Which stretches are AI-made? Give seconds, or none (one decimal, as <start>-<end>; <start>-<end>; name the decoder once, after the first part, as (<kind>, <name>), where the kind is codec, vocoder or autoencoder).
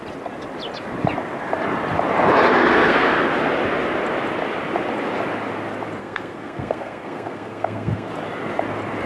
2.7-3.2 (codec, SNAC); 6.0-8.1